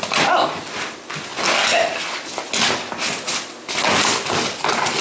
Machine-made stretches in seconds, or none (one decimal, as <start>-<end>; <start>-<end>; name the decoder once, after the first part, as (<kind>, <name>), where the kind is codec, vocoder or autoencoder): none